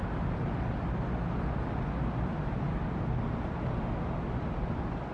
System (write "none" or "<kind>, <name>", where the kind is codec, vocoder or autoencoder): none